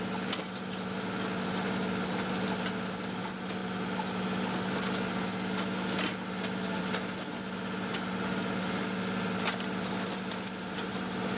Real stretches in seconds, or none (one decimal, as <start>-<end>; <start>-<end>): 0.0-11.4